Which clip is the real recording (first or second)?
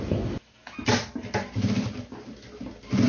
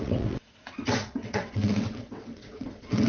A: first